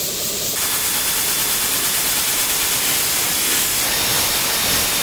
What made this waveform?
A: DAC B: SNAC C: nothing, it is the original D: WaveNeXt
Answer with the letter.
C